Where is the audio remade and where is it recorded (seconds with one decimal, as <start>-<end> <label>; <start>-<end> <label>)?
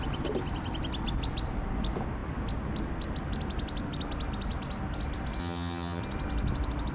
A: 0.0-5.4 recorded; 5.4-6.0 remade; 6.0-6.9 recorded